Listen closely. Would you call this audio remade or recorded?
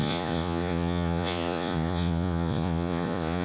remade